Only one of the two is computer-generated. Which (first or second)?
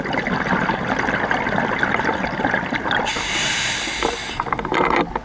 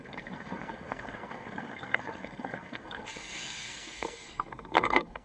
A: second